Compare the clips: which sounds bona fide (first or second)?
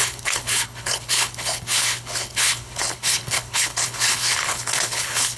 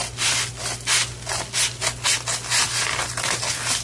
second